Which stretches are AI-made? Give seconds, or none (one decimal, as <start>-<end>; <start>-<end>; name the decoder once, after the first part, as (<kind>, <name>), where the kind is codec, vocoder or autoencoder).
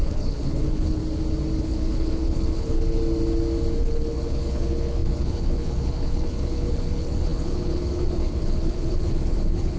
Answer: 0.0-1.0 (codec, HILCodec); 1.6-3.0; 3.8-9.8